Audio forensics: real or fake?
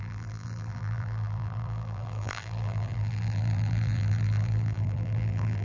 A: fake